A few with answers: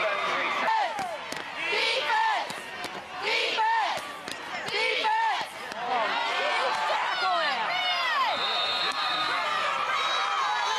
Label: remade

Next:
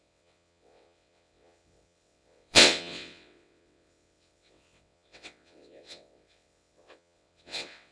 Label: remade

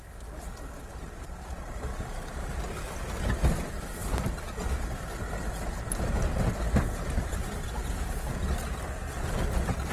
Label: recorded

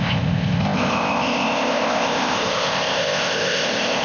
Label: remade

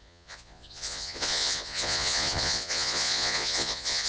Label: remade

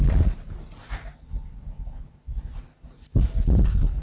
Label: recorded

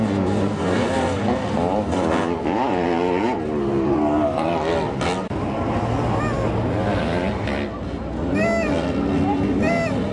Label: recorded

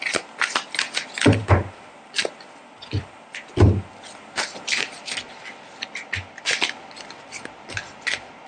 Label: recorded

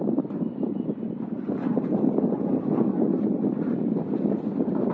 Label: recorded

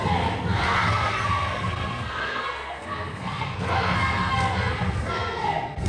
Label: remade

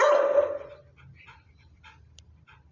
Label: recorded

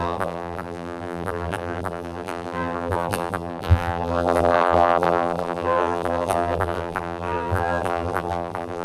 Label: remade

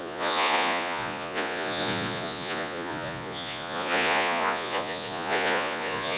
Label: remade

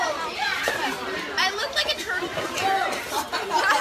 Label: remade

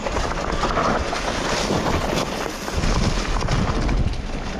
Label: recorded